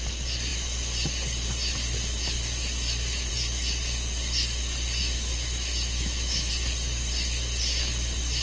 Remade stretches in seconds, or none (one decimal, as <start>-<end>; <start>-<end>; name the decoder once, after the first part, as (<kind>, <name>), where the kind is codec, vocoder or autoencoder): 5.0-6.5 (autoencoder, DAC-VAE)